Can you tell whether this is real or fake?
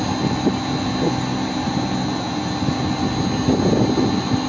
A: real